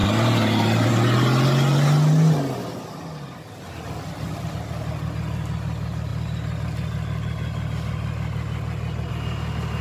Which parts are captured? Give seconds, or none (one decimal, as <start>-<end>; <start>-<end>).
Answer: 0.0-9.8